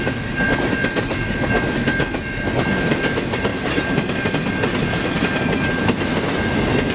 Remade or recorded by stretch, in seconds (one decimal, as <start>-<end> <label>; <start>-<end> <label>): 0.0-3.5 recorded; 3.5-4.3 remade; 4.3-6.9 recorded